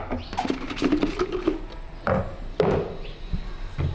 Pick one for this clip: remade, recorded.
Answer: recorded